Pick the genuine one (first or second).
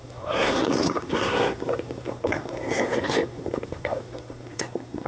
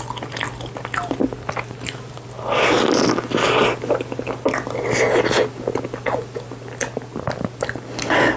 second